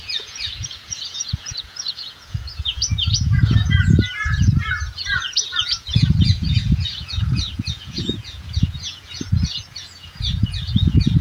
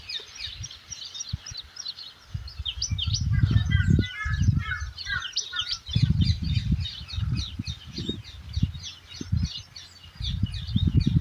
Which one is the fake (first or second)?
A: first